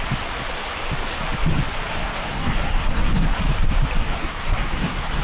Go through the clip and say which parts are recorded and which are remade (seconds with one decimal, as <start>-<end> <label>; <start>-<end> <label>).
0.0-1.9 recorded; 1.9-3.4 remade; 3.4-4.0 recorded; 4.0-5.2 remade